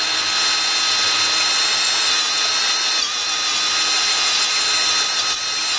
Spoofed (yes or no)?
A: no